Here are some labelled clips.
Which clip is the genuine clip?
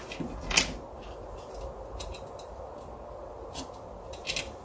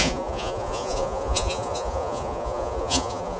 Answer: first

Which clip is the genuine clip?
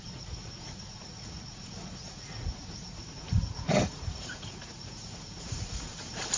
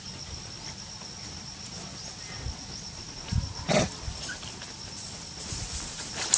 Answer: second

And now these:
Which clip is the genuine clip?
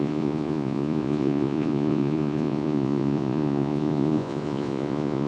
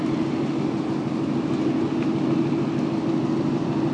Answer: second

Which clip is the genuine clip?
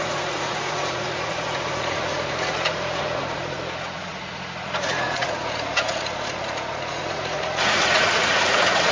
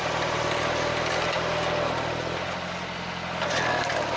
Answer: second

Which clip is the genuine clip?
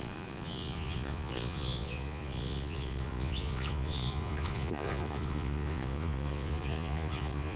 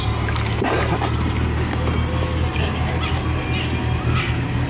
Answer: second